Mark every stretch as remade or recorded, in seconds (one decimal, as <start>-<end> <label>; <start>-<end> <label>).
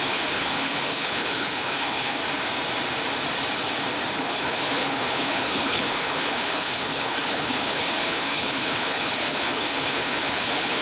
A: 0.0-2.2 remade; 2.2-4.1 recorded; 4.1-10.8 remade